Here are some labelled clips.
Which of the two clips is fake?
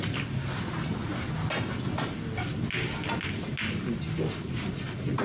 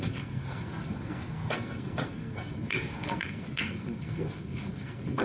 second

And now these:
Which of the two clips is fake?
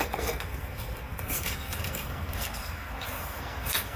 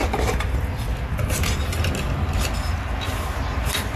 first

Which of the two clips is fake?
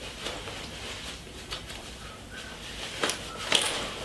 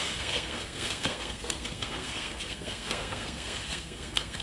second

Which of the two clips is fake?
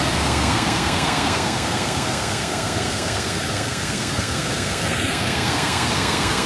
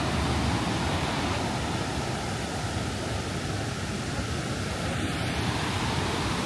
first